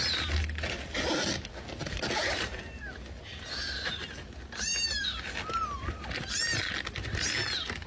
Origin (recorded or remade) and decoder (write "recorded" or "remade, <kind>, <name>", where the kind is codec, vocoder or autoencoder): recorded